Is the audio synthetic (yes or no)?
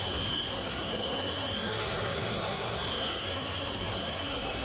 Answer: yes